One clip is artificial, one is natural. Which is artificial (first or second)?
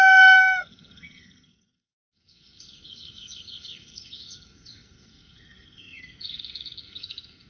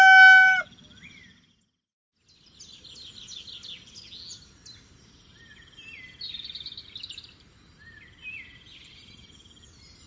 first